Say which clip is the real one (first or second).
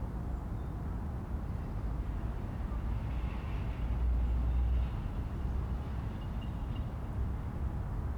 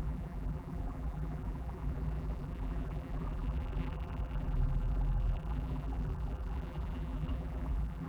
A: first